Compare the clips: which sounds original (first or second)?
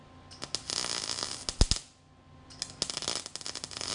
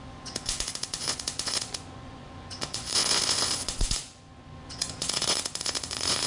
first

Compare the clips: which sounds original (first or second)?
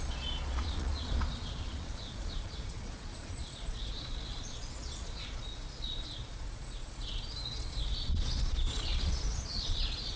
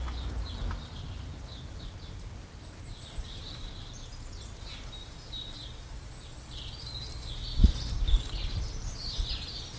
second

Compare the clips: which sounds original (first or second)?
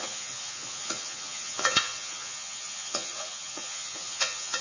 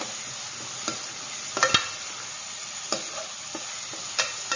second